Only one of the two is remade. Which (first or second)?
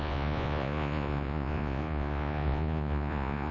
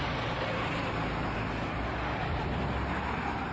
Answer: first